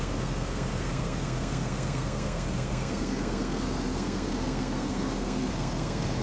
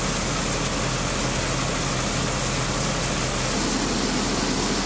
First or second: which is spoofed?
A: first